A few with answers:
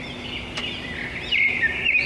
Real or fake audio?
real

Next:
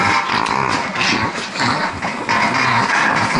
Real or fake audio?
real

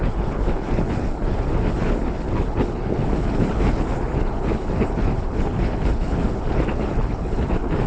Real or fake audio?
fake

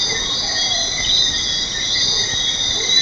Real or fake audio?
real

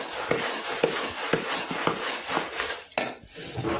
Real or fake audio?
real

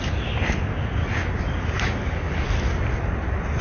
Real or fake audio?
real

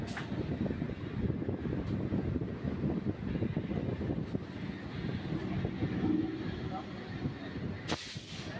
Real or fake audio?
real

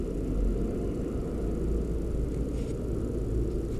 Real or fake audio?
real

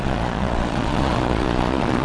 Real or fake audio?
fake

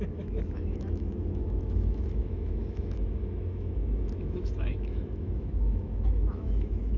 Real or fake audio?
fake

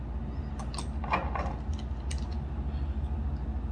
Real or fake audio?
real